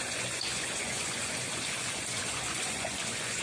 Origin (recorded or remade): remade